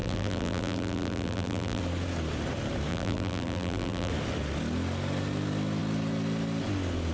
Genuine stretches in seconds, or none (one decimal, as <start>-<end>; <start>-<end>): 1.8-2.9; 4.1-7.1